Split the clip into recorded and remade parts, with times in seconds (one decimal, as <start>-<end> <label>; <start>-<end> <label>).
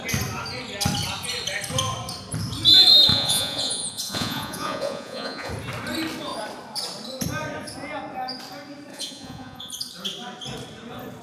0.0-3.1 recorded; 3.1-5.5 remade; 5.5-8.9 recorded; 8.9-9.7 remade; 9.7-11.2 recorded